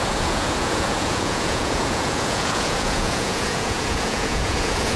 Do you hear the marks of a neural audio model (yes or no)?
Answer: yes